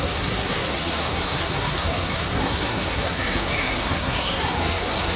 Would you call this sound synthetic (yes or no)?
yes